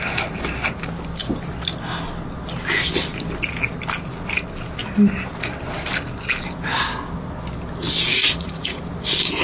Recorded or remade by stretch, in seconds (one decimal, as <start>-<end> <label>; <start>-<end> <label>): 0.0-8.1 recorded; 8.1-8.8 remade; 8.8-9.4 recorded